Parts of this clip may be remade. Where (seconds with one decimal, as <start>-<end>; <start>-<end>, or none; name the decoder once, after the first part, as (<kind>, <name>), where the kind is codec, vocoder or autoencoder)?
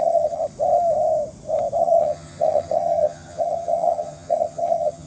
0.0-0.4 (vocoder, HiFi-GAN); 1.8-5.1